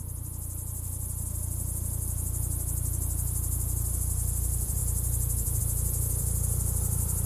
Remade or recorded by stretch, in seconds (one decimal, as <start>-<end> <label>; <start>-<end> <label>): 0.0-7.3 remade